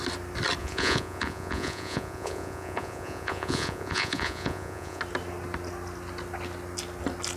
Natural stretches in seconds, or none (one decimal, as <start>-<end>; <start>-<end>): 0.0-0.6; 5.0-7.4